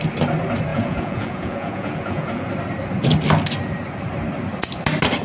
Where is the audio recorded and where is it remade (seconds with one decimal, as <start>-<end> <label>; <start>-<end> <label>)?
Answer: 0.0-0.7 recorded; 0.7-2.5 remade; 2.5-5.2 recorded